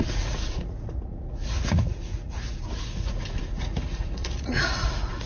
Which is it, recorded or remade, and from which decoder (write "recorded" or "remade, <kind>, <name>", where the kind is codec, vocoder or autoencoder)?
remade, vocoder, Vocos